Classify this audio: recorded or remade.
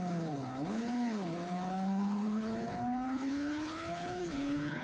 remade